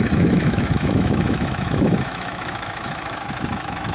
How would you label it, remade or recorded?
remade